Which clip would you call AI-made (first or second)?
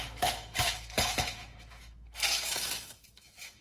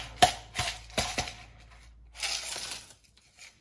first